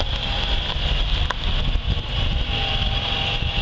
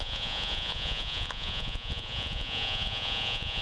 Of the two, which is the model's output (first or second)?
second